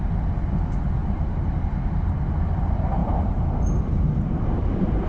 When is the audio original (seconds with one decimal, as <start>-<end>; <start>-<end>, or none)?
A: 0.0-1.0; 1.5-3.0